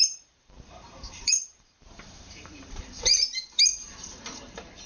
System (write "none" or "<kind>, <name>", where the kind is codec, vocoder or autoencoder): vocoder, BigVGAN v2